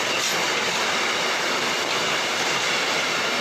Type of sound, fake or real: real